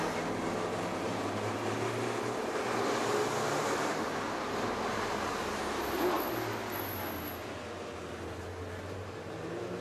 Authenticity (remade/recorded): recorded